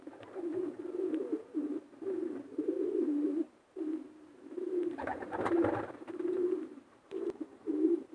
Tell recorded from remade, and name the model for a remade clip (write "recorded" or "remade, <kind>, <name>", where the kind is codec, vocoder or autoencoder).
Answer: remade, vocoder, BigVGAN v2